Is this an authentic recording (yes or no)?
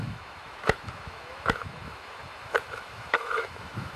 no